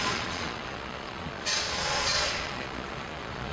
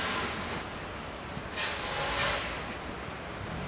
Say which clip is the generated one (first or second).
first